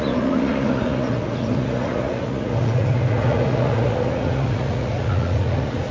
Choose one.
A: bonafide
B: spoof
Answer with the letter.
B